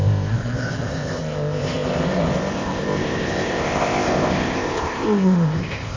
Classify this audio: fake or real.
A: fake